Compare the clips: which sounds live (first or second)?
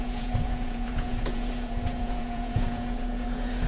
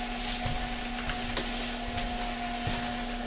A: second